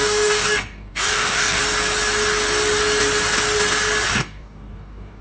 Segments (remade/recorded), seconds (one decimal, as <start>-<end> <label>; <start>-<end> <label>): 0.0-1.6 remade; 1.6-4.1 recorded; 4.1-5.2 remade